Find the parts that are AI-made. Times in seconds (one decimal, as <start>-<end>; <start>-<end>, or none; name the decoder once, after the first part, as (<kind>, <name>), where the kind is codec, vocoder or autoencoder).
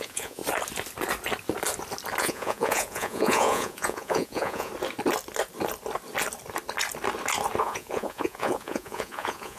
0.0-0.4 (vocoder, Vocos); 2.2-4.7; 7.6-9.6